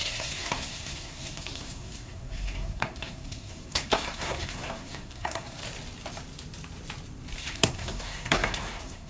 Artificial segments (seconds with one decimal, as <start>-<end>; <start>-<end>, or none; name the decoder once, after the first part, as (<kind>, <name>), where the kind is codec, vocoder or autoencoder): 0.0-5.6 (codec, SNAC); 7.4-9.1